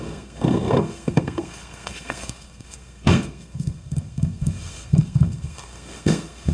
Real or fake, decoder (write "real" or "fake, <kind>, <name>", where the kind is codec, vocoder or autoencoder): fake, codec, SNAC